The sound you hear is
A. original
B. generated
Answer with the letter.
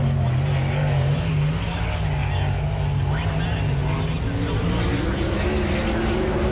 A